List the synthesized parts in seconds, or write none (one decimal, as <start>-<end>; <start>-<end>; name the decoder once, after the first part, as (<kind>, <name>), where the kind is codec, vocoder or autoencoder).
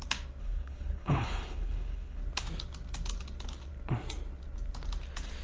0.4-2.2 (codec, HILCodec)